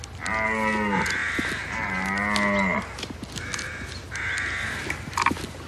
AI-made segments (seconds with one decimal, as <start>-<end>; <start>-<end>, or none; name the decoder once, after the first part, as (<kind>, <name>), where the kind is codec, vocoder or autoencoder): none